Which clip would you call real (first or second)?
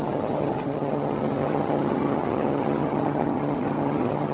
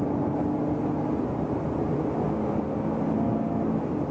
second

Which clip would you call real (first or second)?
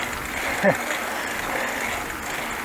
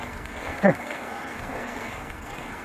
first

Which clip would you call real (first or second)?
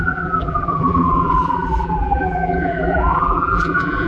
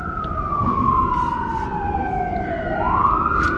second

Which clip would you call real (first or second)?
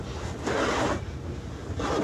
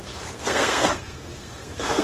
first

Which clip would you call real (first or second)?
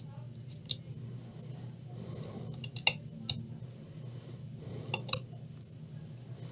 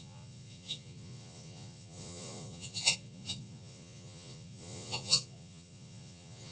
first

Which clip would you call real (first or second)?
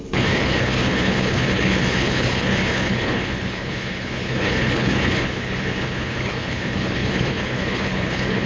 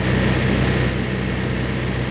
second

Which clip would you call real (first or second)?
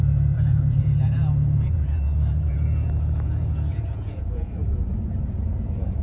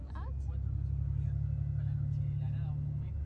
second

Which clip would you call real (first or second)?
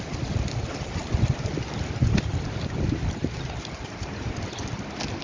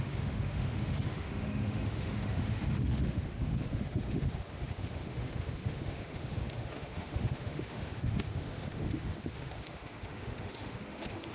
first